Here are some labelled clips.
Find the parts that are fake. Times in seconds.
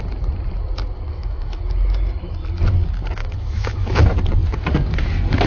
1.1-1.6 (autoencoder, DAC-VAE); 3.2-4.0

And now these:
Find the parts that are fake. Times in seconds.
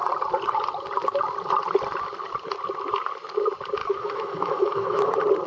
3.8-5.1 (autoencoder, DAC-VAE)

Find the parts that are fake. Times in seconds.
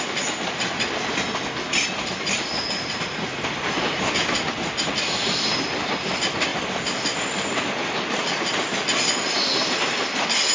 none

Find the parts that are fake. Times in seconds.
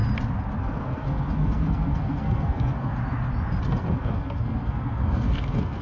0.6-2.9 (codec, SNAC); 3.6-5.8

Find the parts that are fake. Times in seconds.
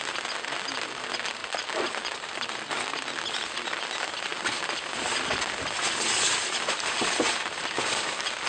none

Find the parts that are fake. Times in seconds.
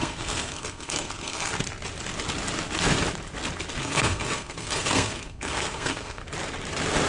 0.0-1.5 (codec, SNAC); 3.8-6.2